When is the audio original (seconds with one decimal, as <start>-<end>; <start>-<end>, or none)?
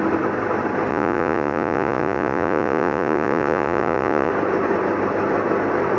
0.0-0.9; 4.3-6.0